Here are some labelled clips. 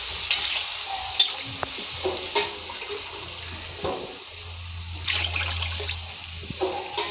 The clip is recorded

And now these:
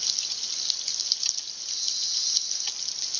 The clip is recorded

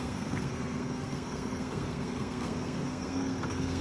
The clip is remade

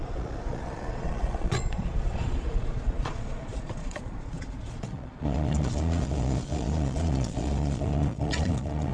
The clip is remade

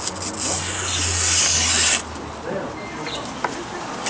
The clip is recorded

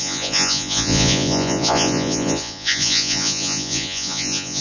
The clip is remade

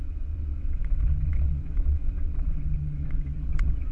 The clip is remade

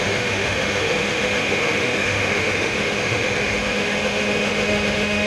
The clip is remade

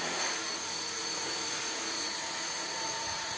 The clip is remade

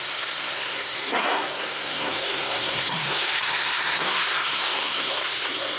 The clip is remade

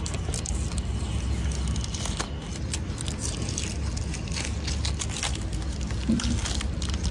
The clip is recorded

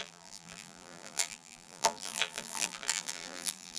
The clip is remade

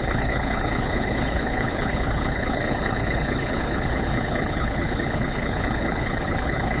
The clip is remade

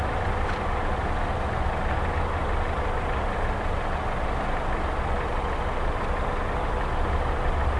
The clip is recorded